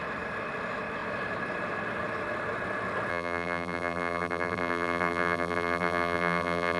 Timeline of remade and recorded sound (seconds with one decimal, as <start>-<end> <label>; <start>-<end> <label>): 0.0-3.1 recorded; 3.1-6.8 remade